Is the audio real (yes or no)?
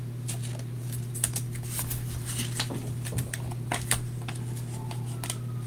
yes